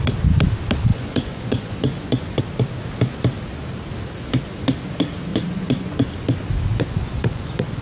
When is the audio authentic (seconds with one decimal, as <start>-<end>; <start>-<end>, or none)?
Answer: 0.0-0.9; 2.4-5.3; 6.1-6.7